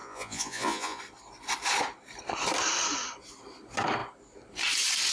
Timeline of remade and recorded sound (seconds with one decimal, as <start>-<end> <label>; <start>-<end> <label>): 0.0-1.0 remade; 1.0-5.1 recorded

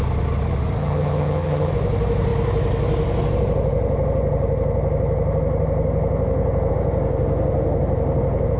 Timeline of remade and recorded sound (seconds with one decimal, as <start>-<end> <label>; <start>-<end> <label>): 0.0-0.8 recorded; 0.8-1.7 remade; 1.7-8.6 recorded

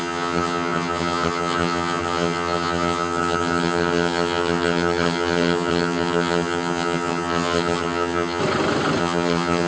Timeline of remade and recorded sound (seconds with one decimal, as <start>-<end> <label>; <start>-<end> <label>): 0.0-8.4 remade; 8.4-9.0 recorded; 9.0-9.7 remade

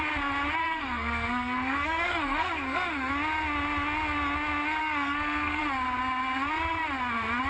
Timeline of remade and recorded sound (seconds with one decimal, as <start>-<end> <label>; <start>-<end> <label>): 0.0-0.6 recorded; 0.6-3.1 remade; 3.1-4.8 recorded; 4.8-5.6 remade; 5.6-7.5 recorded

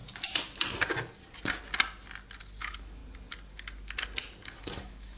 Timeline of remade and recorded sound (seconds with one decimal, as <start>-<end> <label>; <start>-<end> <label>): 0.0-2.6 recorded; 2.6-3.0 remade; 3.0-4.6 recorded; 4.6-5.2 remade

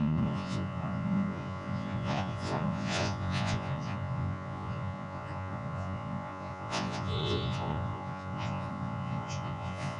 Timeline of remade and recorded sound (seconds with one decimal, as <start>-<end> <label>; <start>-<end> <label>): 0.0-10.0 remade